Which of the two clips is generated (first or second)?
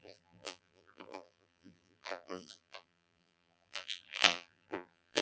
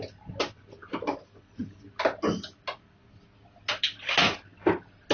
first